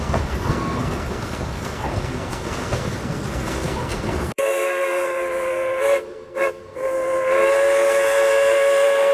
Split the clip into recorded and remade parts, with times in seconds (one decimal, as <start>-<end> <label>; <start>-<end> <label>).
0.0-9.1 remade